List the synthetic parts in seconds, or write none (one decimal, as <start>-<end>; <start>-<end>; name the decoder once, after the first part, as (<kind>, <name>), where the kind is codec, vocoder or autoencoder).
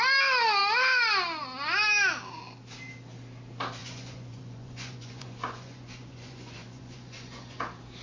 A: 3.8-7.6 (vocoder, Vocos)